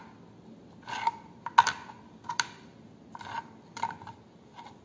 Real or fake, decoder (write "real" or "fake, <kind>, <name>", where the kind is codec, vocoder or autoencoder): real